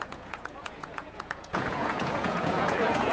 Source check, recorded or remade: remade